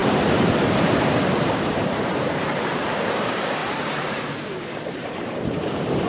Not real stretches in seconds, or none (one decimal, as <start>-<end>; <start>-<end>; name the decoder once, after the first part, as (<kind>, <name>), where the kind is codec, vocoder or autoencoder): 0.0-6.1 (vocoder, BigVGAN v2)